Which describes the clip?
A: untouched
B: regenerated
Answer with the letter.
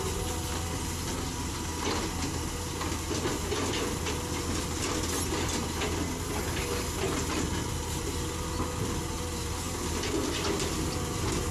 A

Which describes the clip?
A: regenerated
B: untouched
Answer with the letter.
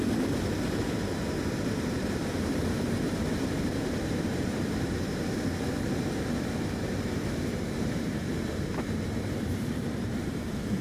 A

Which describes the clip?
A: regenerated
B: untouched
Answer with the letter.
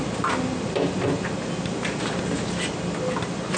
B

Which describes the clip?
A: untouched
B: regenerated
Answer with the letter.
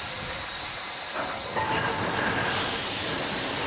B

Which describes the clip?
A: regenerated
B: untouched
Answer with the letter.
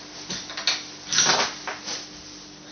B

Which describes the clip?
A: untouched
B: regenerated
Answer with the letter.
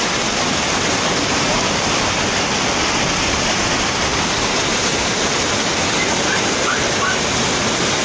A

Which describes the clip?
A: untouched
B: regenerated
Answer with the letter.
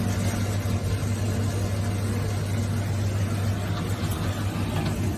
A